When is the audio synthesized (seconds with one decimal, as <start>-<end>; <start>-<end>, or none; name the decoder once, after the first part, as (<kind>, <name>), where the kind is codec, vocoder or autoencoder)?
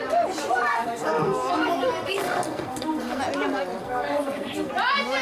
0.7-3.2 (codec, SNAC); 3.8-4.7